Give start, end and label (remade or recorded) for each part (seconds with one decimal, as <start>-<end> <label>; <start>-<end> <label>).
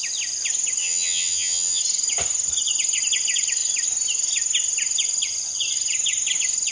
0.0-0.8 recorded; 0.8-1.8 remade; 1.8-6.7 recorded